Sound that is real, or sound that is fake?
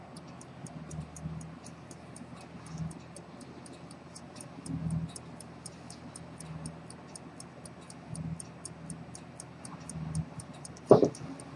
real